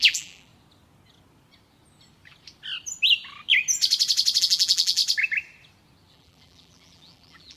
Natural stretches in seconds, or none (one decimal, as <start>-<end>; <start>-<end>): 0.5-4.4; 5.0-6.1